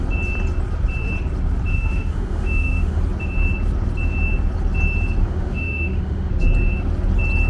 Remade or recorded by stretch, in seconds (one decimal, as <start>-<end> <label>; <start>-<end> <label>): 0.0-1.7 recorded; 1.7-3.0 remade; 3.0-5.2 recorded; 5.2-6.3 remade; 6.3-7.5 recorded